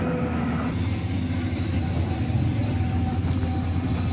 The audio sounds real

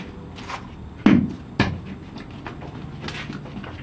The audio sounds real